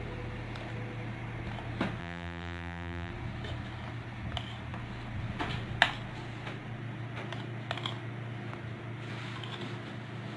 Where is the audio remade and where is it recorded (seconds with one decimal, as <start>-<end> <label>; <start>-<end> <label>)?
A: 0.0-2.0 recorded; 2.0-3.1 remade; 3.1-10.4 recorded